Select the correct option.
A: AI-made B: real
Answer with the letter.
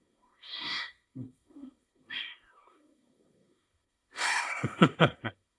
A